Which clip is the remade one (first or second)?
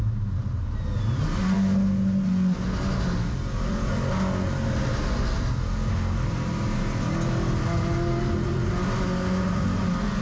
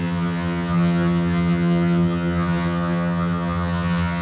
second